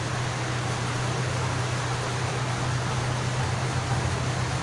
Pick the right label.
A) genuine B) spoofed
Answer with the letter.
A